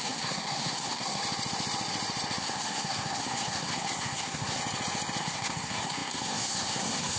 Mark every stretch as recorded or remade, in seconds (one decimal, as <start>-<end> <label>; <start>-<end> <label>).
0.0-1.2 remade; 1.2-2.4 recorded; 2.4-4.6 remade; 4.6-5.2 recorded; 5.2-7.2 remade